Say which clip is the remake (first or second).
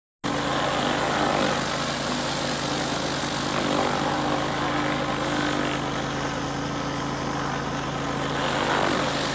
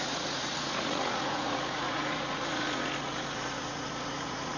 second